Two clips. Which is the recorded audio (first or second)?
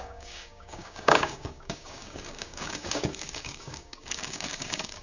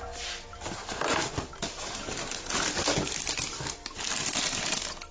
second